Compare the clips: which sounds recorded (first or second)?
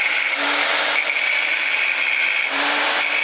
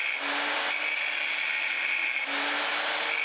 second